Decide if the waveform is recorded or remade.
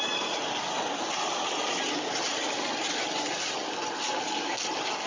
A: recorded